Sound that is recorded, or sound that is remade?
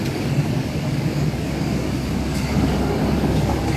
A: remade